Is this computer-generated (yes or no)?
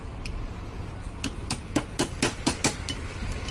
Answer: no